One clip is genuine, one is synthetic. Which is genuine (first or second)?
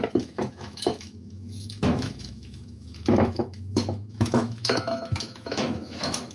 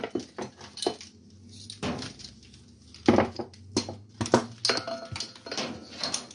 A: second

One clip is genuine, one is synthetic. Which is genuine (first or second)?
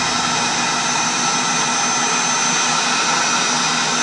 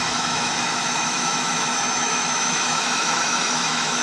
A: first